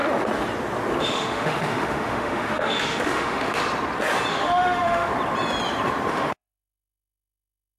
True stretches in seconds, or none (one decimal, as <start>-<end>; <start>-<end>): 0.0-1.0; 3.6-4.3; 5.1-6.1